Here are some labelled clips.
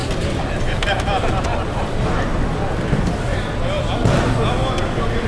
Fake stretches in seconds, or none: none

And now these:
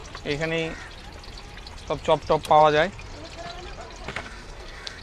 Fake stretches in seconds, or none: 4.1-5.0 (codec, SNAC)